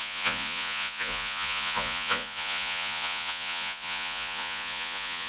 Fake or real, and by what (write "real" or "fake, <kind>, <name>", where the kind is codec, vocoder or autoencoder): fake, vocoder, Vocos